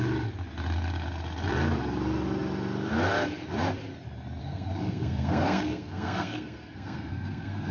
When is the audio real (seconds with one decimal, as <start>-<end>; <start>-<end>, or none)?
0.0-4.4